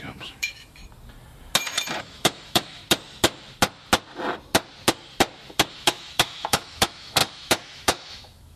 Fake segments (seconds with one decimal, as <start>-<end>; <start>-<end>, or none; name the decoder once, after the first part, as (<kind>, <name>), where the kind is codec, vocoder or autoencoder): 0.0-0.8 (autoencoder, DAC-VAE); 2.0-2.8; 5.7-8.6